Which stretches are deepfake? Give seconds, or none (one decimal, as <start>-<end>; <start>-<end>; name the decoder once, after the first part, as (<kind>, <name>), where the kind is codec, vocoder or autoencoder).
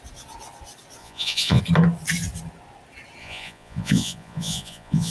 1.0-1.6 (vocoder, Vocos); 3.2-5.1